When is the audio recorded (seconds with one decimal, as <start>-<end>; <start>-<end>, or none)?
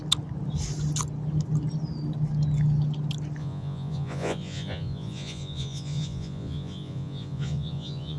0.0-3.4